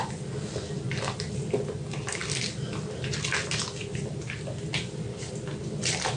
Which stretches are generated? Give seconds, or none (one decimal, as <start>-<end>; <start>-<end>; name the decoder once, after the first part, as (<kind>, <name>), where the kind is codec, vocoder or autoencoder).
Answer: none